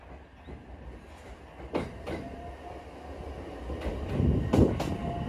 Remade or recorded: recorded